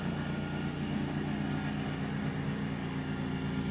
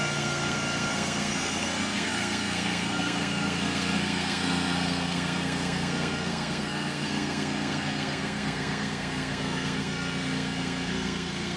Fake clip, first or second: second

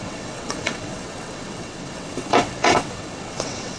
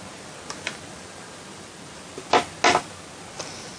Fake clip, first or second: first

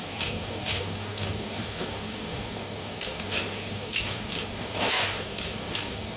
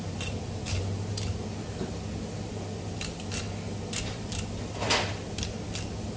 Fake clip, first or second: first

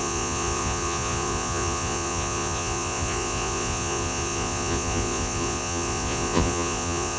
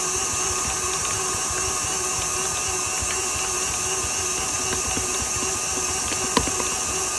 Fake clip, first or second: first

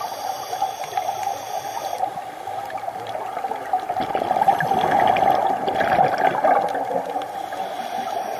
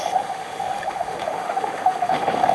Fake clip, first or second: second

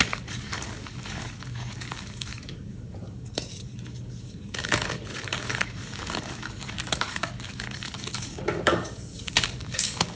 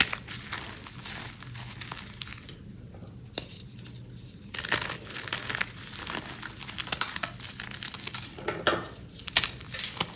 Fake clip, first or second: first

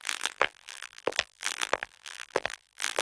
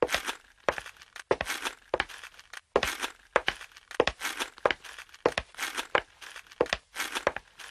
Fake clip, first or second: first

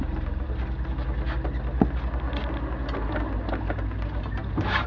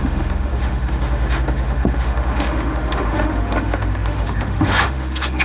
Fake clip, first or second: second